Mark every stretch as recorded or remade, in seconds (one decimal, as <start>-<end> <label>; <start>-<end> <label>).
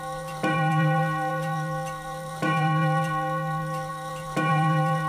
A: 0.0-5.1 remade